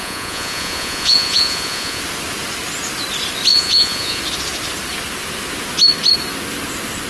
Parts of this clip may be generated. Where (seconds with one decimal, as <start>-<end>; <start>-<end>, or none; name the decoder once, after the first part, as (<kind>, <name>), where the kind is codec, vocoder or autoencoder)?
0.0-2.0 (vocoder, Vocos); 3.5-4.2